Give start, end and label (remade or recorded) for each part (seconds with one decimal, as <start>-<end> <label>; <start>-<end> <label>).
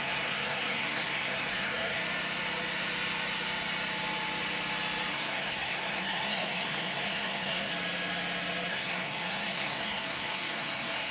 0.0-2.0 remade; 2.0-5.1 recorded; 5.1-7.7 remade; 7.7-8.7 recorded; 8.7-11.1 remade